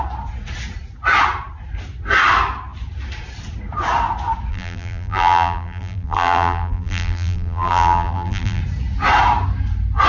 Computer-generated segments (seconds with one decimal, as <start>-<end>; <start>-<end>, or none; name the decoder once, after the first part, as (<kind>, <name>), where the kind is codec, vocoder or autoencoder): 4.5-8.6 (vocoder, BigVGAN v2)

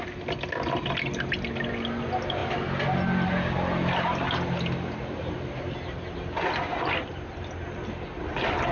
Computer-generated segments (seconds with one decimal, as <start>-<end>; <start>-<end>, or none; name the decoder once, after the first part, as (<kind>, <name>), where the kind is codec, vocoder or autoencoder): none

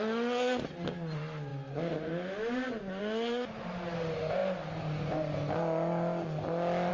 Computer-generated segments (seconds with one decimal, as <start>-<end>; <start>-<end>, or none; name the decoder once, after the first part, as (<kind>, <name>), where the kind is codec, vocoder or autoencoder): none

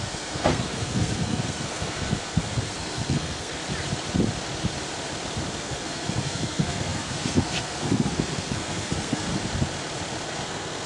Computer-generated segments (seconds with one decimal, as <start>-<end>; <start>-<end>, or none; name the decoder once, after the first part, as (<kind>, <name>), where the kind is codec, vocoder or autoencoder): 0.0-3.6 (codec, SNAC); 5.5-9.3; 10.3-10.9

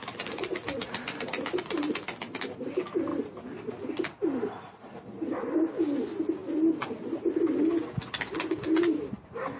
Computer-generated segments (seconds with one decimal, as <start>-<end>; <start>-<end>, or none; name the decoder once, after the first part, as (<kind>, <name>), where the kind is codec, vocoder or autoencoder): none

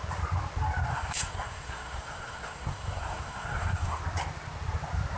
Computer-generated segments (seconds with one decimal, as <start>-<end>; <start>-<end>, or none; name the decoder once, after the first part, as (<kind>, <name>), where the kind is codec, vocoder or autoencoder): 0.9-4.0 (codec, SNAC)

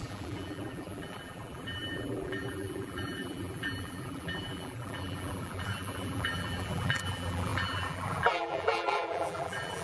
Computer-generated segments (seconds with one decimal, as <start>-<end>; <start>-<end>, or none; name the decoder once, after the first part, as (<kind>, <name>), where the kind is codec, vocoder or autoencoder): 0.0-9.8 (vocoder, BigVGAN v2)

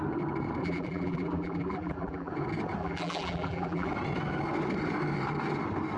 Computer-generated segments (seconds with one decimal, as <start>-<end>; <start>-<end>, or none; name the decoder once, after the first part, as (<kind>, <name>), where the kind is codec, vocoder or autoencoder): 0.6-2.3 (vocoder, BigVGAN v2); 2.8-3.9